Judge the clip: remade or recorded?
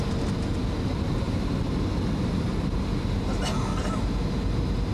recorded